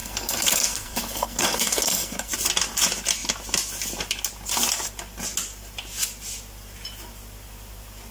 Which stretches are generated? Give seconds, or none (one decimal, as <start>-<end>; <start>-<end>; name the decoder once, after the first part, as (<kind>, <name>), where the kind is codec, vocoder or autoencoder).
0.0-2.3 (codec, SNAC)